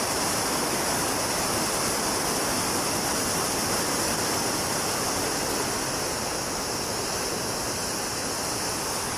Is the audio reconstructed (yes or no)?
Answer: no